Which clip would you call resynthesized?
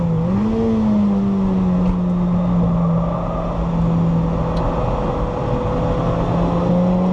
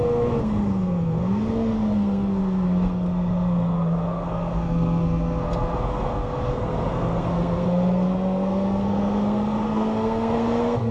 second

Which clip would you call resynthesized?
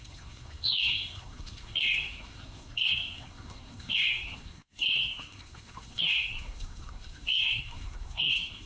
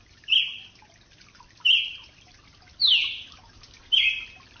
first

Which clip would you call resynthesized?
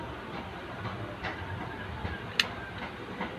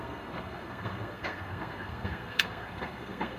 second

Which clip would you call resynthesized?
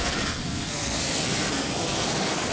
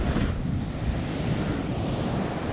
first